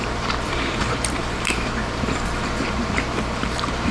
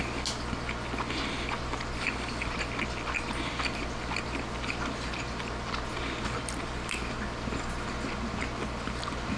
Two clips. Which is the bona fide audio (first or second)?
second